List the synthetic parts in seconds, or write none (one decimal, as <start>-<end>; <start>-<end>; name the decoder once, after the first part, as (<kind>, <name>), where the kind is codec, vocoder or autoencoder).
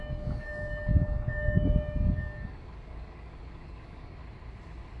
0.0-4.2 (codec, DAC)